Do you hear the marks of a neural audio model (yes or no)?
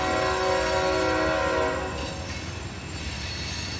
no